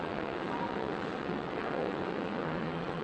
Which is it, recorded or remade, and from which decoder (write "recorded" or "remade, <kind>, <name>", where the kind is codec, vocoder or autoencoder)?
remade, vocoder, WaveNeXt